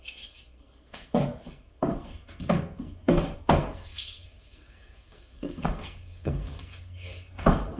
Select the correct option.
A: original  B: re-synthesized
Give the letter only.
B